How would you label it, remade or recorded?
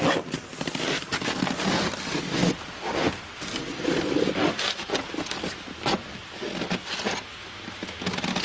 recorded